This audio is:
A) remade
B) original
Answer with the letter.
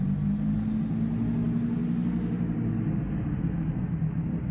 B